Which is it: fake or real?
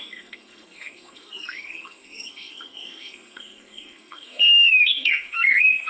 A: fake